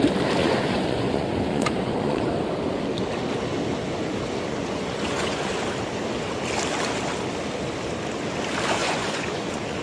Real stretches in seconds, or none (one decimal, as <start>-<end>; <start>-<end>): 0.0-0.4; 2.3-4.3; 5.5-8.8